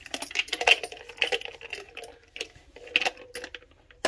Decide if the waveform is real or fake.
real